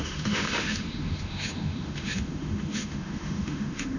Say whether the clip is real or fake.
fake